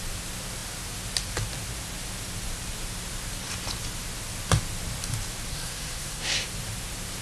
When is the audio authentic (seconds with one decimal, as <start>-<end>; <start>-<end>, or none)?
0.0-5.5; 6.4-7.2

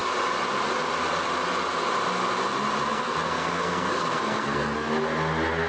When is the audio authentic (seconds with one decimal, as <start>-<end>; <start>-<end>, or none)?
0.0-2.9; 4.9-5.7

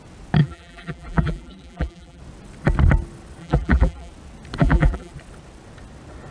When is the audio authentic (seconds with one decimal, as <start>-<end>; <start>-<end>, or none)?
0.0-0.4; 2.2-3.4; 4.1-4.6; 5.1-6.3

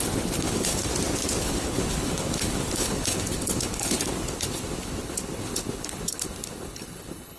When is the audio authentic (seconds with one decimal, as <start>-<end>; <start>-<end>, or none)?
0.9-1.4

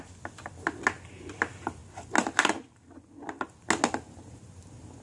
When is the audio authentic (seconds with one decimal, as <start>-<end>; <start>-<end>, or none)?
0.0-5.0

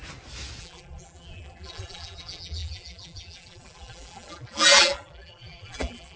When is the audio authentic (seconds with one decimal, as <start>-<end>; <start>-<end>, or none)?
0.0-0.6

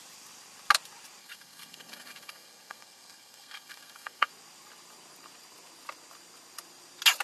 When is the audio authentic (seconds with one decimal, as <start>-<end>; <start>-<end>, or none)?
0.0-1.2; 4.3-7.2

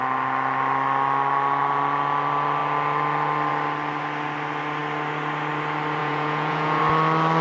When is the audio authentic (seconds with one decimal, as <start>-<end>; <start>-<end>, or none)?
0.0-6.0; 6.8-7.4